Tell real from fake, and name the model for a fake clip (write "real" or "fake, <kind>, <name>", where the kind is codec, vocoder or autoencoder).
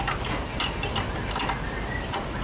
real